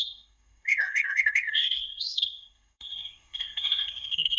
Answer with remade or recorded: remade